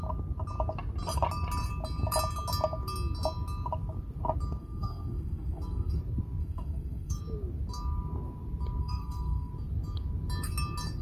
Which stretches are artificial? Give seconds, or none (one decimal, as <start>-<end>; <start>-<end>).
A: 4.6-6.0; 6.4-7.2; 8.8-9.5